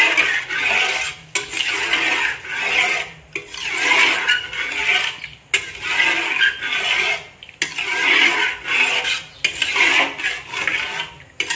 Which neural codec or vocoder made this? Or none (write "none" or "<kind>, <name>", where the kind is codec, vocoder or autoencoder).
none